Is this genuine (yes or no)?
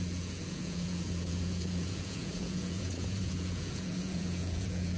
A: no